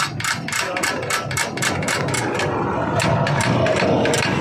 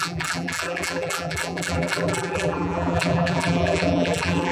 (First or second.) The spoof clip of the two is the second